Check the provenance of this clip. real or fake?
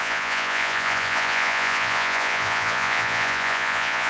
fake